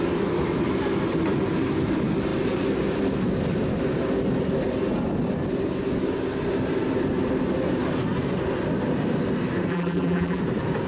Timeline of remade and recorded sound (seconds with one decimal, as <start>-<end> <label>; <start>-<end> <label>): 0.0-9.7 recorded; 9.7-10.4 remade; 10.4-10.9 recorded